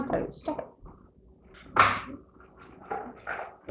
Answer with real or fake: real